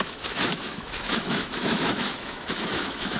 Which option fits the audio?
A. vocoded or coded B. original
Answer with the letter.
A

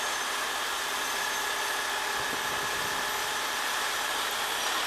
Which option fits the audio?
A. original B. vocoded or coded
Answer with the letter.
A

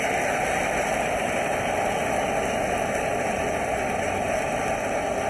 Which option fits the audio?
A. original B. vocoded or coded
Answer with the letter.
A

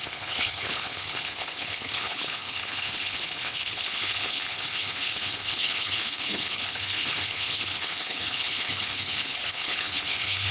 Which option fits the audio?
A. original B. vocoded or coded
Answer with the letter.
B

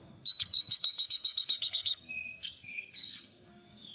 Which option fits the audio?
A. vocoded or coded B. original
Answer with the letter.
A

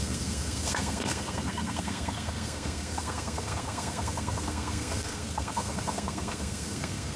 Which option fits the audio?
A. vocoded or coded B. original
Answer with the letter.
A